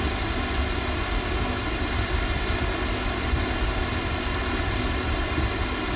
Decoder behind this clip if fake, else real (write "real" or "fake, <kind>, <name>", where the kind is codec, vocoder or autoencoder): real